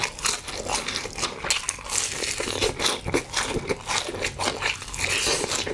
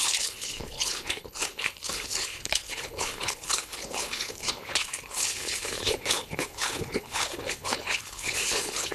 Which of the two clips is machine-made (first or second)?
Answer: second